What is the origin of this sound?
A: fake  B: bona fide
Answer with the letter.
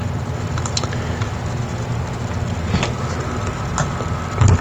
B